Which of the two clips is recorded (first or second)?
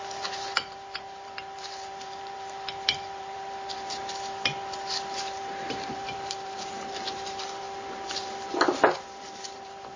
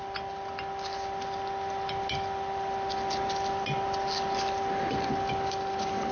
second